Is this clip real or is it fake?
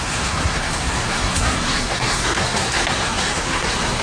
fake